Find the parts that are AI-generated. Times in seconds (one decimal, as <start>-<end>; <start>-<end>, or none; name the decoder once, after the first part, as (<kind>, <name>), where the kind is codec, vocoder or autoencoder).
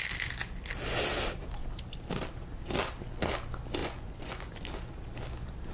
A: 3.8-4.6 (vocoder, Vocos)